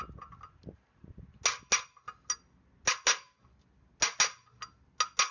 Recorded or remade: recorded